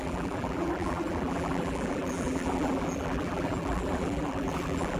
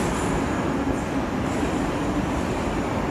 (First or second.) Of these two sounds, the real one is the second